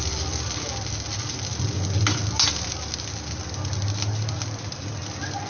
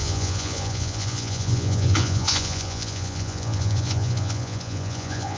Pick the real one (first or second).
first